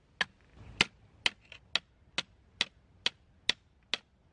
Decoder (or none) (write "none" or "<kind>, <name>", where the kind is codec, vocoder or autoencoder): none